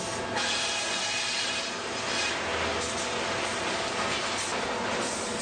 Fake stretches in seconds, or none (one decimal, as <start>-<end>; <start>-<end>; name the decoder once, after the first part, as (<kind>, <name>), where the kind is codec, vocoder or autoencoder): none